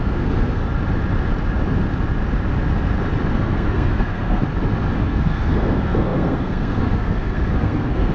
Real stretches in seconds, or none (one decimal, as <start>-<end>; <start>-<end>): 0.6-3.3; 4.4-5.0